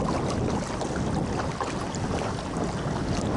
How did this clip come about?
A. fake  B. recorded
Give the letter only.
B